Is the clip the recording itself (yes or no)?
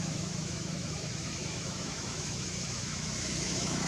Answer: no